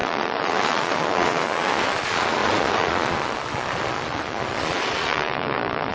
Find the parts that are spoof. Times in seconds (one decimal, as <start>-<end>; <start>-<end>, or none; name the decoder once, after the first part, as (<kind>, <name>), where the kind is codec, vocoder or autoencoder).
0.0-5.9 (vocoder, Vocos)